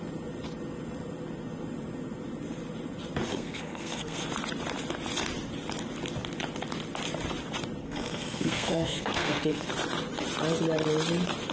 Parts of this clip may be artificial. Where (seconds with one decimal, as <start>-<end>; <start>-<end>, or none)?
3.3-4.2; 7.8-9.7